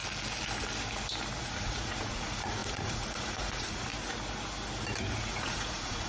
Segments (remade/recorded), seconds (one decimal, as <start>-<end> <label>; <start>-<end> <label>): 0.0-1.4 recorded; 1.4-3.9 remade; 3.9-5.3 recorded; 5.3-6.1 remade

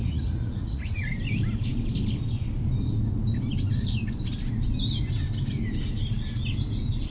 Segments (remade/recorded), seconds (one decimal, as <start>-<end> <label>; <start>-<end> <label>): 0.0-1.1 remade; 1.1-7.1 recorded

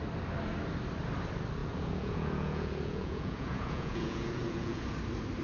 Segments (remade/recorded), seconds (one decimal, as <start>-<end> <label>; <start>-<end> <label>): 0.0-1.6 recorded; 1.6-4.8 remade; 4.8-5.4 recorded

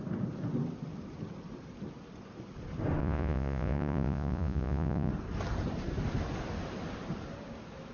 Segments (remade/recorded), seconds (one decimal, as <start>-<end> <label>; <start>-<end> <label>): 0.0-3.0 recorded; 3.0-5.1 remade; 5.1-7.9 recorded

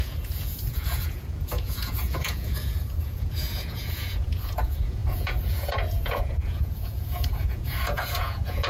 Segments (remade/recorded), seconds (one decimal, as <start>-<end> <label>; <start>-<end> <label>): 0.0-8.7 remade

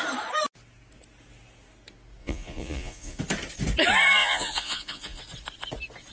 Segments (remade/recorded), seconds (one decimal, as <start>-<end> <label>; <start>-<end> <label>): 0.0-2.2 recorded; 2.2-3.2 remade; 3.2-4.2 recorded; 4.2-5.2 remade; 5.2-6.1 recorded